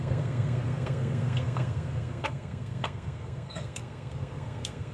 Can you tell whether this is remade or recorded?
remade